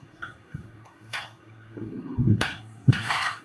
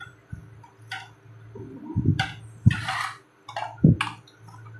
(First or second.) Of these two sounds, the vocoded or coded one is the first